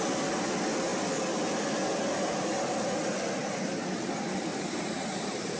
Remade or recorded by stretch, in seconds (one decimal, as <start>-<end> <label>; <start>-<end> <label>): 0.0-3.4 recorded; 3.4-4.1 remade; 4.1-4.5 recorded; 4.5-5.6 remade